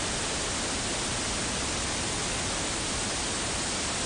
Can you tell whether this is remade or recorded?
recorded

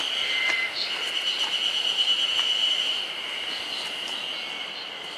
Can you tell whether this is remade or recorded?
recorded